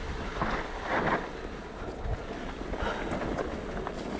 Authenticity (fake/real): real